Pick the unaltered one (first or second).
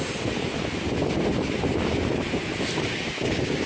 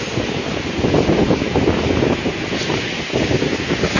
second